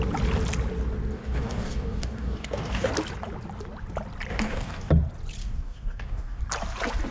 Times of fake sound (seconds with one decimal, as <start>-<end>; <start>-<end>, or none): 1.1-2.9; 4.3-4.9; 5.4-6.4